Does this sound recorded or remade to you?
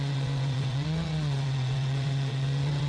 remade